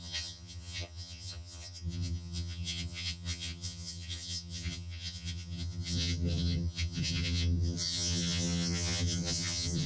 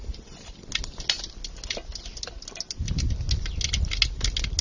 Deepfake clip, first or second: first